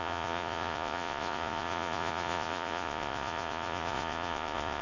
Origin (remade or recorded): remade